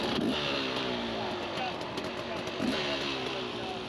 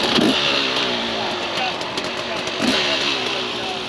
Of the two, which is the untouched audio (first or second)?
first